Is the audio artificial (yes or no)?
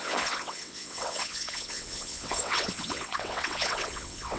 yes